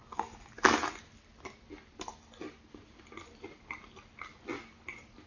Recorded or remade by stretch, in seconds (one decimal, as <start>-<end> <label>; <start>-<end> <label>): 0.0-5.3 recorded

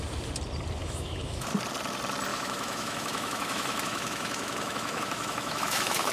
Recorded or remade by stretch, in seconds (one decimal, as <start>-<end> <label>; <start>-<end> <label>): 0.0-0.8 recorded; 0.8-1.5 remade; 1.5-2.3 recorded; 2.3-6.1 remade